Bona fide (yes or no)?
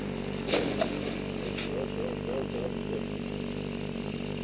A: yes